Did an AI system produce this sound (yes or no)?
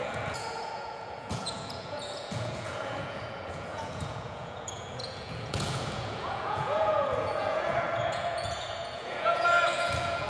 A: yes